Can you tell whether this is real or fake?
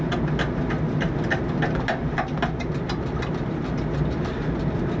real